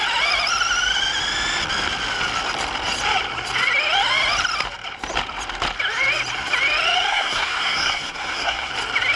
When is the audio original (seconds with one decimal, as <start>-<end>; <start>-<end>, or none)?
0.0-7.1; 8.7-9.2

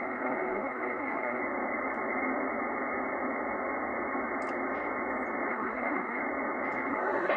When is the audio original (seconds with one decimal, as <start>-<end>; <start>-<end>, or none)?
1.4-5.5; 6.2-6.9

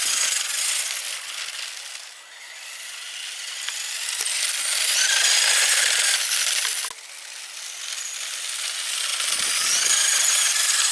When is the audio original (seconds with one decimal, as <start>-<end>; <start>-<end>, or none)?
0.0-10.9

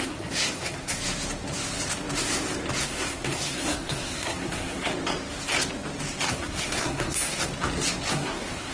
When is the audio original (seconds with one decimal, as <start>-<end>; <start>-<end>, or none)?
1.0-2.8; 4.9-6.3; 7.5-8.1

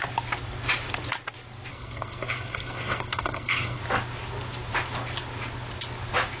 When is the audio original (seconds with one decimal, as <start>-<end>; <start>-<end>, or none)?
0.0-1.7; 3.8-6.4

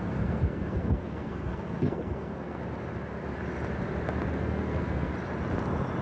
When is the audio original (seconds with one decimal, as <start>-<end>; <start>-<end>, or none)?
2.6-4.4; 5.1-6.0

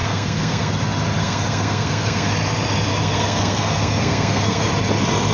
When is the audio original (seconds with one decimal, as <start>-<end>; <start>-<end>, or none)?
0.7-1.2; 2.3-2.9; 4.7-5.3